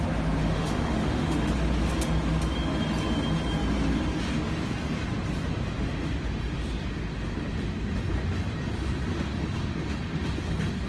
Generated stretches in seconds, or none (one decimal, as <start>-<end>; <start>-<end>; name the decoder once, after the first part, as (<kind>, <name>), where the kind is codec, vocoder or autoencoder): 0.4-1.5 (autoencoder, DAC-VAE)